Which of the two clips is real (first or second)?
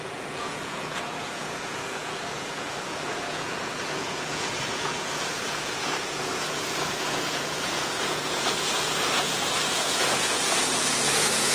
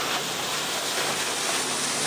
second